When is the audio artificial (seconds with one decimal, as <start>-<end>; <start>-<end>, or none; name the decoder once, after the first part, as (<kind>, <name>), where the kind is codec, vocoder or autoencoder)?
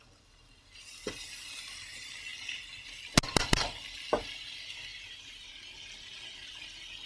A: 4.9-5.5 (vocoder, BigVGAN v2)